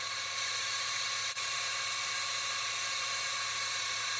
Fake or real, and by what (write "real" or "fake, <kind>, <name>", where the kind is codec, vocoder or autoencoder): fake, vocoder, BigVGAN v2